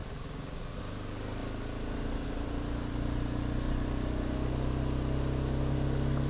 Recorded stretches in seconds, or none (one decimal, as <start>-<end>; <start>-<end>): 0.8-6.3